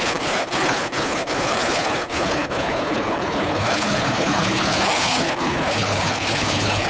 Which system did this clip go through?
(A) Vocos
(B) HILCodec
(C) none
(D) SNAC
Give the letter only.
B